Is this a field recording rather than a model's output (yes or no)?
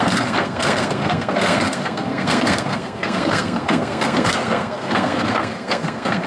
no